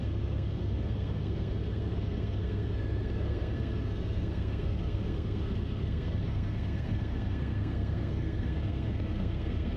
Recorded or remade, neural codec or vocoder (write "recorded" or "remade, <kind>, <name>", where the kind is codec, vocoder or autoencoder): remade, codec, SNAC